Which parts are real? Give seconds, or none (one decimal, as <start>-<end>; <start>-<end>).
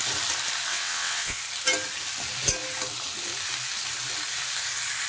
0.0-0.7; 1.4-5.1